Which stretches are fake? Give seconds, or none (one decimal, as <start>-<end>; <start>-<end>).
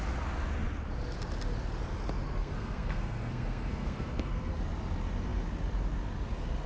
2.4-4.5